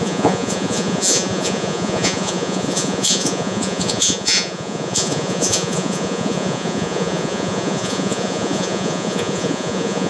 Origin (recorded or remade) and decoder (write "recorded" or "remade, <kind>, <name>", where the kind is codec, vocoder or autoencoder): remade, vocoder, Vocos